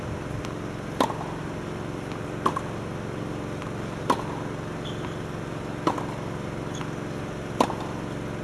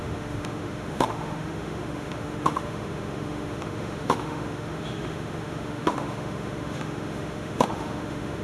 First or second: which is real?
first